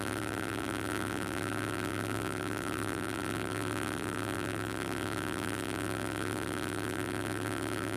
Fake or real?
fake